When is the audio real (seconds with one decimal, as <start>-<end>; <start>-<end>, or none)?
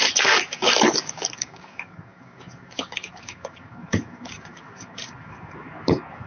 none